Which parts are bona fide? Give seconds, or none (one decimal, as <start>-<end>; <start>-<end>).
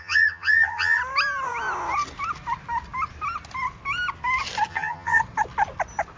1.0-4.7; 5.2-6.2